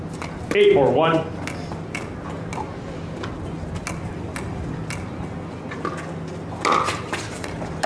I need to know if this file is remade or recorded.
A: recorded